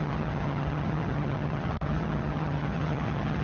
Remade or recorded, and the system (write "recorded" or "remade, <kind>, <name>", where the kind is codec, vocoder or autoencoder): remade, vocoder, HiFi-GAN